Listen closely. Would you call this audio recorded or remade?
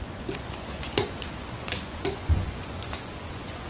remade